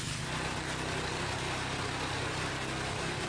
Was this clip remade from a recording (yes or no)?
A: no